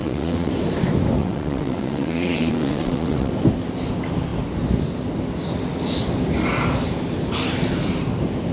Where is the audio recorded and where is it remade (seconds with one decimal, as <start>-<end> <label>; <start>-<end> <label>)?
0.0-0.5 remade; 0.5-1.2 recorded; 1.2-3.3 remade; 3.3-8.5 recorded